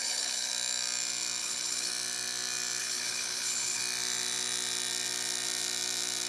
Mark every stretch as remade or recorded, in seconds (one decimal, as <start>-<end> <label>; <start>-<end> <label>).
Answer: 0.0-0.5 remade; 0.5-1.4 recorded; 1.4-1.9 remade; 1.9-2.8 recorded; 2.8-3.8 remade; 3.8-6.3 recorded